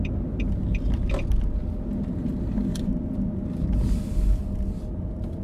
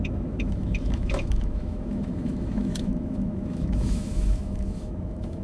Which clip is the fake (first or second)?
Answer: second